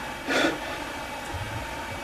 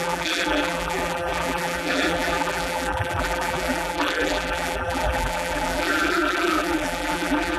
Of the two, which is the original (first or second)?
first